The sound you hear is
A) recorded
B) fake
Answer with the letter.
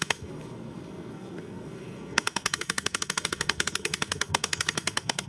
B